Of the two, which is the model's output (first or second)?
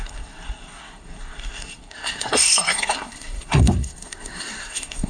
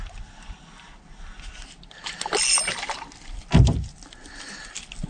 first